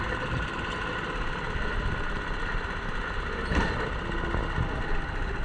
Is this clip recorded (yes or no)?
yes